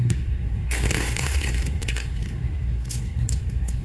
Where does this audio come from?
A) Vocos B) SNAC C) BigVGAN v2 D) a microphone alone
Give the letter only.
B